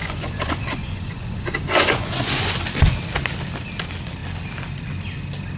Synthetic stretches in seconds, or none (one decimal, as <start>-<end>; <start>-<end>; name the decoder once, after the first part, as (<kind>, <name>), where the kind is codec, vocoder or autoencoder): 0.0-2.5 (vocoder, Vocos)